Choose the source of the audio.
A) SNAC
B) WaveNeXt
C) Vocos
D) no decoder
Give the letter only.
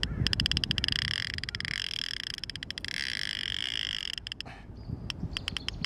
D